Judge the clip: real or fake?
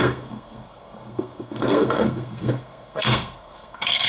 fake